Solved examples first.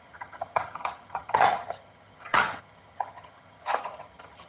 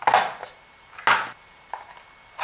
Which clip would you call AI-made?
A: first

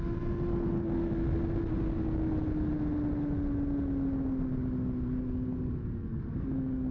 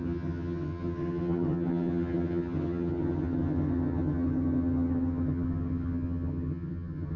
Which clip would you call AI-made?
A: second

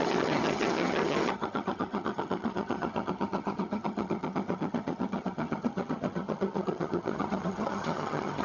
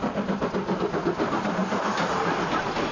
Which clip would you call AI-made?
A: first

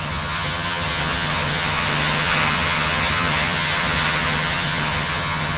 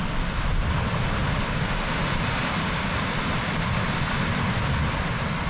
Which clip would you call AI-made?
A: first